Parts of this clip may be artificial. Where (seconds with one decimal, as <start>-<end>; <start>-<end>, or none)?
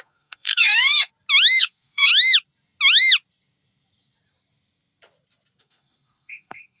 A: 0.0-1.1; 1.6-2.1; 5.6-6.8